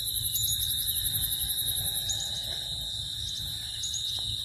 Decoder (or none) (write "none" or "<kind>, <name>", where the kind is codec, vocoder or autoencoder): none